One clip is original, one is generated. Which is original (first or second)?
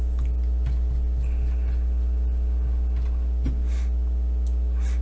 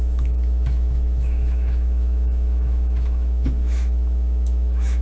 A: first